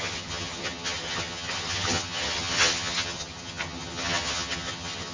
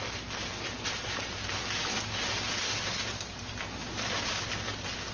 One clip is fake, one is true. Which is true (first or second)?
second